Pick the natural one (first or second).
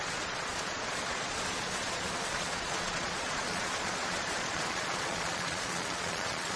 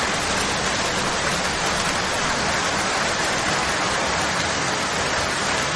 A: second